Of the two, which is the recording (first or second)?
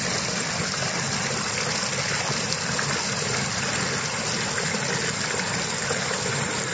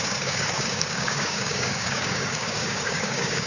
first